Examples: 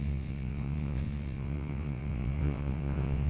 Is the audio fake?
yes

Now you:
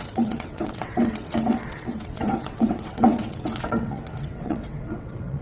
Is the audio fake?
yes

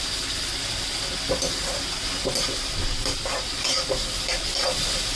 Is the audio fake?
no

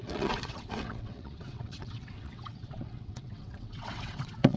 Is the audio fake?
yes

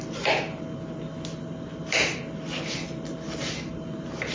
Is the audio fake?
no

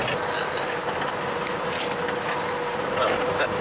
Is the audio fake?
no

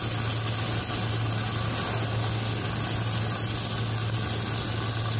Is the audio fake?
no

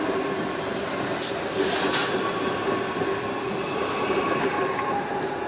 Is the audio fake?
no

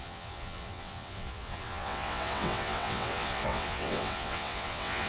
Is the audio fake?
yes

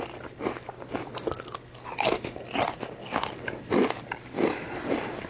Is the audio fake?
no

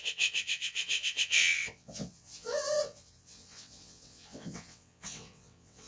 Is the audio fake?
yes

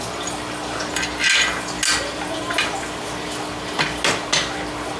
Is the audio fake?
no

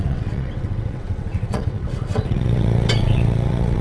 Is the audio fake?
yes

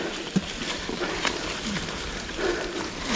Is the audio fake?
no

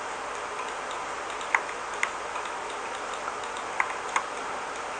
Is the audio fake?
no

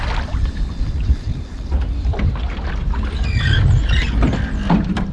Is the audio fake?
no